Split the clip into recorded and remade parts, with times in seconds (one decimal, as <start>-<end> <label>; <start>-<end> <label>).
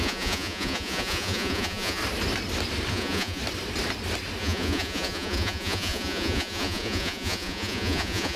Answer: 0.0-2.0 remade; 2.0-2.9 recorded; 2.9-3.4 remade; 3.4-4.4 recorded; 4.4-8.4 remade